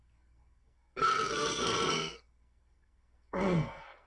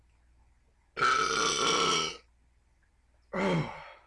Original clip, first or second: second